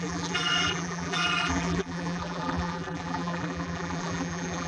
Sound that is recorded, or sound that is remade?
remade